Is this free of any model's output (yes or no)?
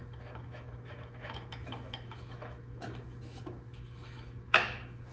no